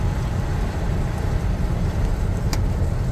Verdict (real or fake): real